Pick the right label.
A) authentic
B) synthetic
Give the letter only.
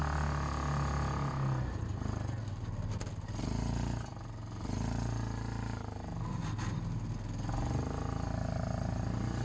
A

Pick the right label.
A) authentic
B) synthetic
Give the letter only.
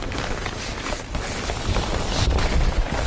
A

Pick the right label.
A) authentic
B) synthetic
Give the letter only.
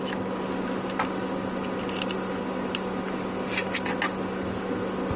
A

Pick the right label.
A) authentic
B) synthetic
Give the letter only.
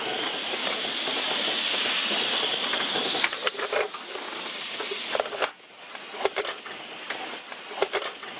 A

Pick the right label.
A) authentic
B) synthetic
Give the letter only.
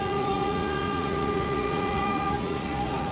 B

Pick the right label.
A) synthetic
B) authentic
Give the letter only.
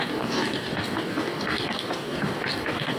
A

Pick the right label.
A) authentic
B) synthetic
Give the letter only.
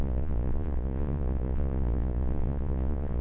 B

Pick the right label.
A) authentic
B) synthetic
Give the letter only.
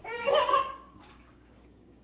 B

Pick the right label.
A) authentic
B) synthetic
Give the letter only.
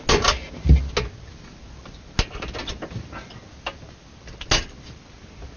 A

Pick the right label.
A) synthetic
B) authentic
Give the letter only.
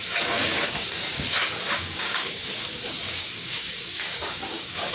A